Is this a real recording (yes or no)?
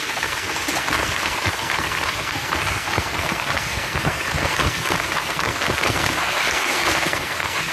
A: no